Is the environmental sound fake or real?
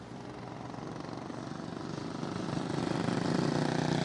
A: real